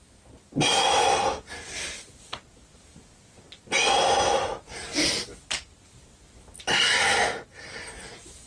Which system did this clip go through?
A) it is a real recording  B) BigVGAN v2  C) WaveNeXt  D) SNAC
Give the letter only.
A